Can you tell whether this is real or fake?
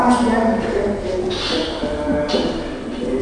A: real